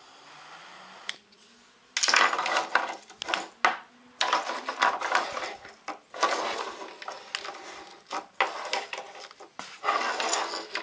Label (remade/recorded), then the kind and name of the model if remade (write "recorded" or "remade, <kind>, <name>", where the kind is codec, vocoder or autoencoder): recorded